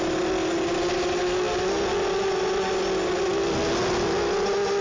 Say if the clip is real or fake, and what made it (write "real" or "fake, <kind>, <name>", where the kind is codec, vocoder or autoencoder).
real